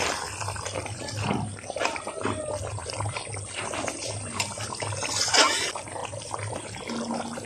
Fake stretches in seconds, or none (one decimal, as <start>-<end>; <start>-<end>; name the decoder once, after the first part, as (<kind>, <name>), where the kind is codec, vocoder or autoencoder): none